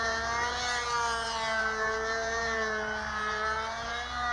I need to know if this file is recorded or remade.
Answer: remade